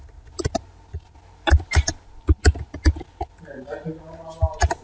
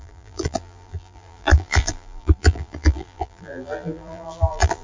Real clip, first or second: first